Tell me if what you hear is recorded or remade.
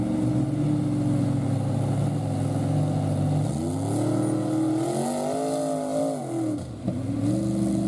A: recorded